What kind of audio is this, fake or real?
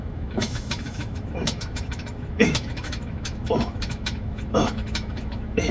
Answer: fake